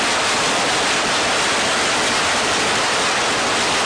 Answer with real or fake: real